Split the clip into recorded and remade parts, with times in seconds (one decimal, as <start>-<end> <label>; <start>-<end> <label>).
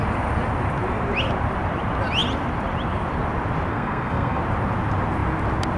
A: 0.0-3.7 recorded; 3.7-4.4 remade; 4.4-5.8 recorded